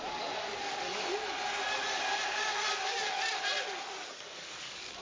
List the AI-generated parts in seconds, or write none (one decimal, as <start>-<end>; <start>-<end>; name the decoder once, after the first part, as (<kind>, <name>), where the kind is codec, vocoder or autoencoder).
0.0-1.1 (codec, DAC); 4.1-5.0